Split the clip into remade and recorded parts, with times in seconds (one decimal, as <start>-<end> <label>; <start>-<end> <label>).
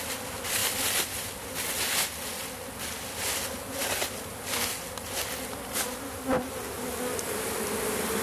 0.0-8.2 recorded